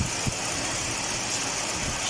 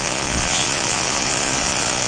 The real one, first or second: first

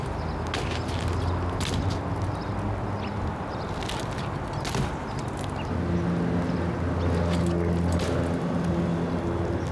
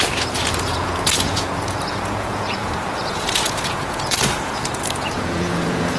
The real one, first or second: first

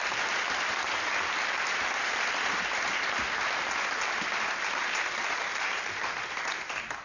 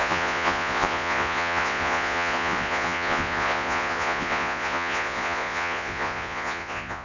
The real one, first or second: first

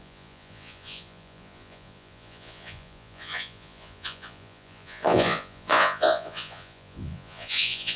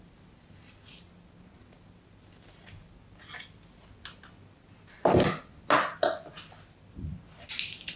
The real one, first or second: second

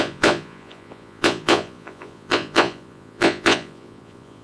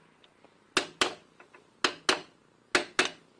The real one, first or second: second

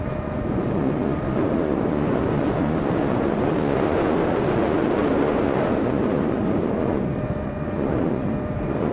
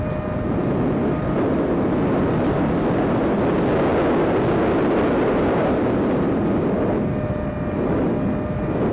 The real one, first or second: second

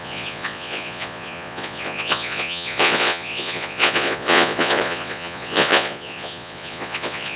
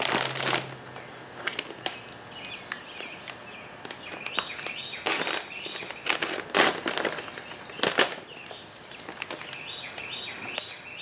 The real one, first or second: second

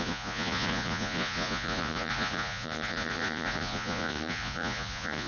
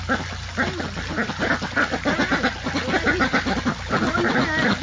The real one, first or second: second